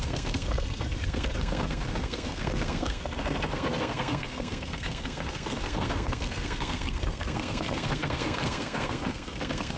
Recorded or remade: remade